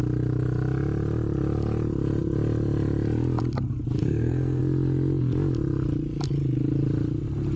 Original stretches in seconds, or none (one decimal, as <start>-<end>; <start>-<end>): 0.0-4.0; 4.6-7.6